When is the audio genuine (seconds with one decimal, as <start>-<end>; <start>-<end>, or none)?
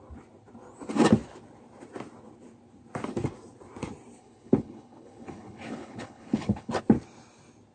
0.0-4.2; 6.8-7.7